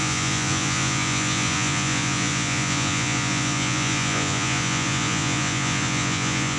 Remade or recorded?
remade